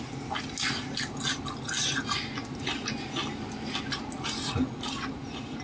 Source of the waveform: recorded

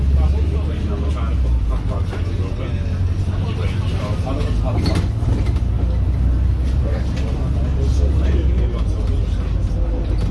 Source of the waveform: recorded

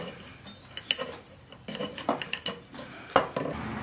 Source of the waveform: recorded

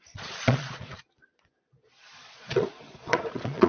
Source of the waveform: remade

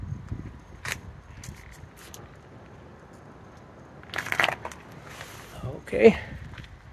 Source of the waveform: recorded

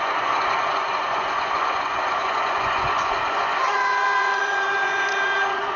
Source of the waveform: remade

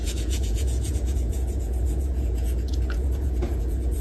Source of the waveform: remade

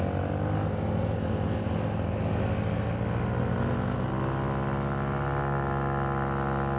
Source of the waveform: recorded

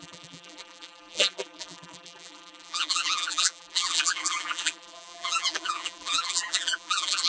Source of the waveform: remade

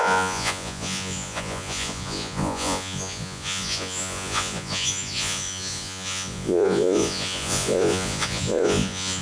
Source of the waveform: remade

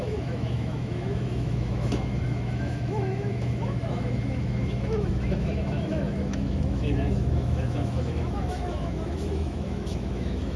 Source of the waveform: remade